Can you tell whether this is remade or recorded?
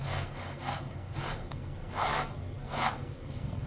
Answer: remade